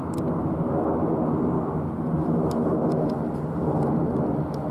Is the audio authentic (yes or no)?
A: yes